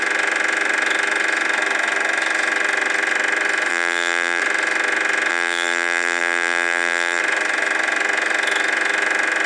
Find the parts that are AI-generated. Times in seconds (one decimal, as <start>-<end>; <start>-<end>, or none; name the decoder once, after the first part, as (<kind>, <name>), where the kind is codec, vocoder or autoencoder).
3.7-4.4 (vocoder, BigVGAN v2); 5.3-7.2